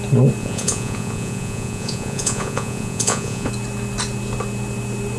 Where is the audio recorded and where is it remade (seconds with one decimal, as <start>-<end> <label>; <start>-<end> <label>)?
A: 0.0-0.4 recorded; 0.4-3.5 remade; 3.5-5.2 recorded